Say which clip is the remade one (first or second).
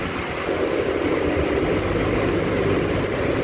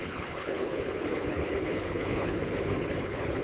second